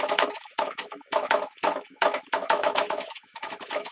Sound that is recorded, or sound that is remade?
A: remade